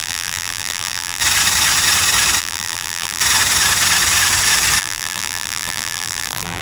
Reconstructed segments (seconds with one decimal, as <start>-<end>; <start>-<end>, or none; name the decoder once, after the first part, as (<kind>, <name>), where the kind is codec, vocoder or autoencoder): 0.0-1.2 (vocoder, BigVGAN v2); 2.4-3.2; 4.8-6.6

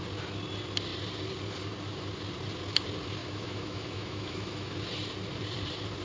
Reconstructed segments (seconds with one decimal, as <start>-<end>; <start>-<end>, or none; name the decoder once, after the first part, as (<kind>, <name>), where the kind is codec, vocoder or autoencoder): 3.2-4.7 (autoencoder, DAC-VAE)

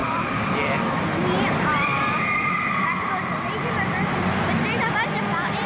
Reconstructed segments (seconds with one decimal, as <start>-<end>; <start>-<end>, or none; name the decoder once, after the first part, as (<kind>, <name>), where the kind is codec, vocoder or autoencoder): none

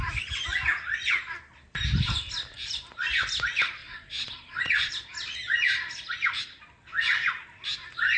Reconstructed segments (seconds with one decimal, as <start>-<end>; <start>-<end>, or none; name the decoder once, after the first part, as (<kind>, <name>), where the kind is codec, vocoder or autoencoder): 3.8-4.9 (vocoder, Vocos)

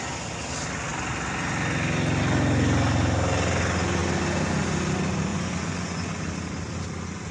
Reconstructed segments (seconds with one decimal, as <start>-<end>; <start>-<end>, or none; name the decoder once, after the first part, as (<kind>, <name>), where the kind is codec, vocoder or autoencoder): 5.3-6.1 (vocoder, Vocos)

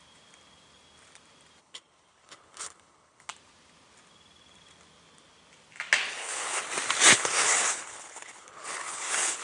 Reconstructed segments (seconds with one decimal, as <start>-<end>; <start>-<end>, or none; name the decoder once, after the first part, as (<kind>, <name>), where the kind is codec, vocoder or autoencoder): 1.6-3.3 (codec, HILCodec); 6.1-6.6; 7.1-9.4